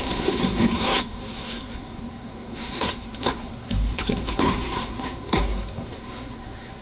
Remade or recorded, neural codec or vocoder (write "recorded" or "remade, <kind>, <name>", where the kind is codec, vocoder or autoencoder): remade, codec, SNAC